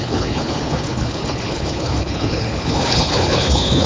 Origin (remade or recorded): remade